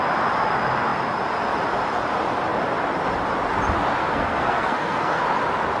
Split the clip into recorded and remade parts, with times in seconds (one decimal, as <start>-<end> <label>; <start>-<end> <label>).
0.0-4.0 recorded; 4.0-5.2 remade; 5.2-5.8 recorded